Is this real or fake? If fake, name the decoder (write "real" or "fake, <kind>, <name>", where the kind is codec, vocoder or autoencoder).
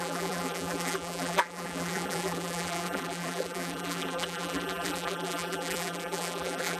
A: fake, vocoder, BigVGAN v2